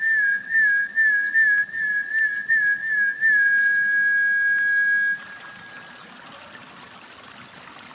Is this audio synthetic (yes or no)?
no